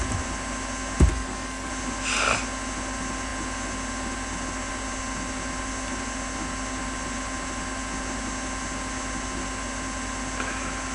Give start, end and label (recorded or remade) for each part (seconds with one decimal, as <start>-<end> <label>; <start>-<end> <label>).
0.0-1.1 recorded; 1.1-1.7 remade; 1.7-10.9 recorded

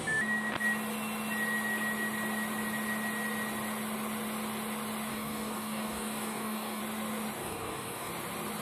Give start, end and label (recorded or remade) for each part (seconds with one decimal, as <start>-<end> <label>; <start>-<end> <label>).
0.0-5.1 recorded; 5.1-6.8 remade; 6.8-7.4 recorded; 7.4-8.1 remade; 8.1-8.6 recorded